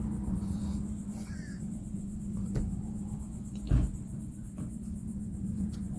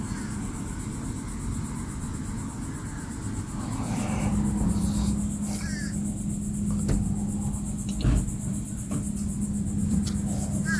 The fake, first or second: first